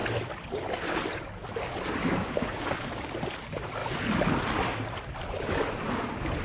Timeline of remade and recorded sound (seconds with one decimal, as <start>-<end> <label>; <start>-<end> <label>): 0.0-2.0 recorded; 2.0-3.1 remade; 3.1-6.4 recorded

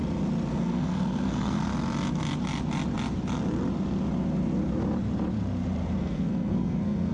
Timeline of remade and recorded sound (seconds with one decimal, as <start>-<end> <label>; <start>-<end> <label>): 0.0-0.5 recorded; 0.5-1.7 remade; 1.7-6.0 recorded; 6.0-7.1 remade

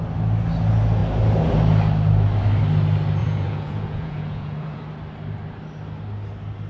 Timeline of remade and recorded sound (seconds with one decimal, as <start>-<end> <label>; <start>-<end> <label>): 0.0-3.2 recorded; 3.2-4.8 remade; 4.8-6.7 recorded